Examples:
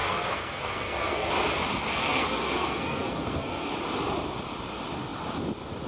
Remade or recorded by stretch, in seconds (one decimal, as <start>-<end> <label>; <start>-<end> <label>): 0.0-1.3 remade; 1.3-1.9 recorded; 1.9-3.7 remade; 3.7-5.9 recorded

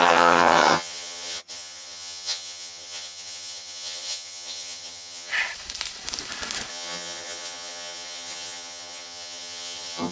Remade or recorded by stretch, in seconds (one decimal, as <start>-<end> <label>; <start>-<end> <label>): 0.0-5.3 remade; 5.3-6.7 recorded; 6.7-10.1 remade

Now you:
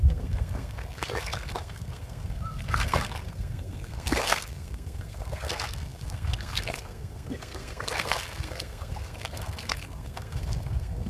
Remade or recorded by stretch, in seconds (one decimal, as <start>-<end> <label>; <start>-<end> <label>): 0.0-11.1 remade

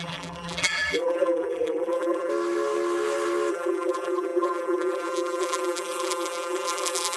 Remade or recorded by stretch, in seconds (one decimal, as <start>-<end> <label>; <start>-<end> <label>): 0.0-2.3 remade; 2.3-3.5 recorded; 3.5-7.2 remade

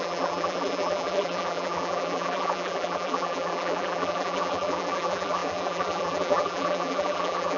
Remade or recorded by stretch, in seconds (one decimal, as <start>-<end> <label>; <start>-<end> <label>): 0.0-7.6 remade

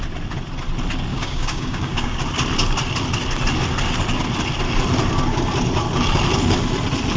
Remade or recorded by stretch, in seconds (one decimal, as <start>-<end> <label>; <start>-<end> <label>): 0.0-1.1 recorded; 1.1-2.2 remade; 2.2-7.2 recorded